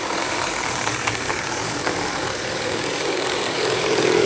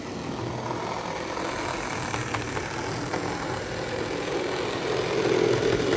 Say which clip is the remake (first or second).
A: first